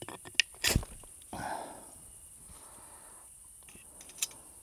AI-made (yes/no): no